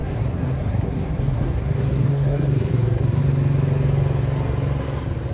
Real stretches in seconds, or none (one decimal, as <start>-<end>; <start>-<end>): 3.2-5.3